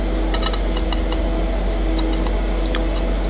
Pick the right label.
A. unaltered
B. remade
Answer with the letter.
A